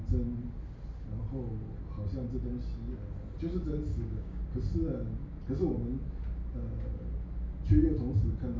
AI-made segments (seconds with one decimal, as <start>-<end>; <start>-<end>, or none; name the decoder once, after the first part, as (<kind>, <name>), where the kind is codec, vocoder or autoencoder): 3.9-4.4 (codec, DAC)